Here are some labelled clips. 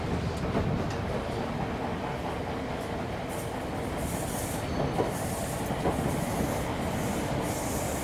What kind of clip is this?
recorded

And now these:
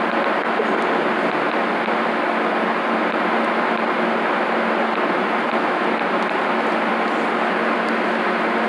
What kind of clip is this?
recorded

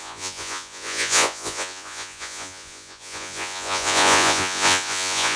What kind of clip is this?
remade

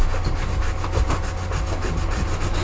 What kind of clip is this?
recorded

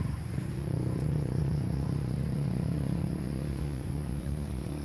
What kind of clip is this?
remade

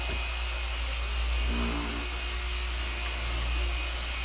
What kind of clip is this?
recorded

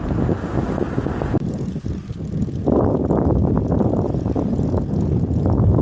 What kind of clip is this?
recorded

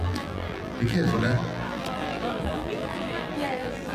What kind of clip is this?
remade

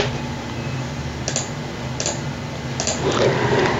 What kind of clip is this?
recorded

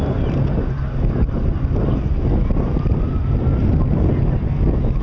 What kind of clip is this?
recorded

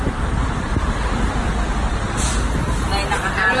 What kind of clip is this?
recorded